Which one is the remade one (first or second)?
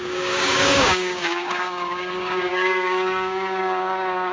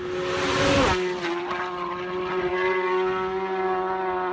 first